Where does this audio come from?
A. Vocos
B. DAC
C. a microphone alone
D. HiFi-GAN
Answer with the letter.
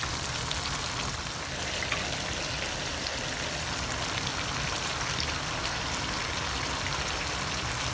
C